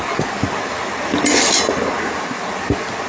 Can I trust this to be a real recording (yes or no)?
yes